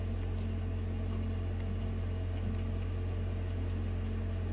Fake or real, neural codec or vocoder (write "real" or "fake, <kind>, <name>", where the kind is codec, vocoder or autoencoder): real